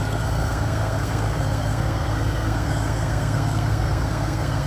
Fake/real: fake